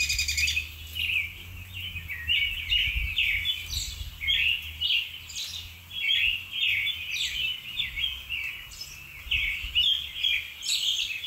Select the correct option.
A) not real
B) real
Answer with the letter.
B